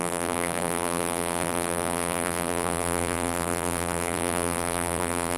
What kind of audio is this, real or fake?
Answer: fake